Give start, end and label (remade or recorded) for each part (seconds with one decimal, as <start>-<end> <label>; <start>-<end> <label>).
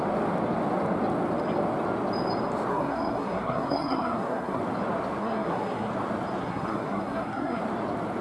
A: 0.0-2.7 recorded; 2.7-4.6 remade; 4.6-5.2 recorded; 5.2-5.9 remade; 5.9-6.4 recorded; 6.4-7.6 remade; 7.6-8.2 recorded